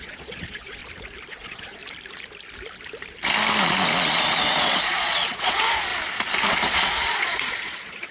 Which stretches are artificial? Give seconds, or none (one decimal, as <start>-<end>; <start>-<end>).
0.0-0.8; 1.3-1.8; 4.4-5.9; 6.5-8.1